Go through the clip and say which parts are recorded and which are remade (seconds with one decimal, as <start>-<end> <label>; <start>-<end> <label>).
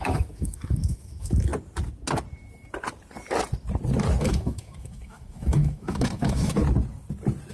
0.0-1.5 remade; 1.5-4.2 recorded; 4.2-6.6 remade; 6.6-7.5 recorded